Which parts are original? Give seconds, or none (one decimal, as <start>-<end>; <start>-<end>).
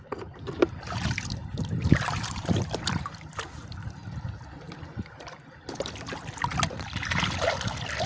0.0-8.1